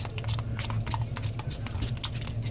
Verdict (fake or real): real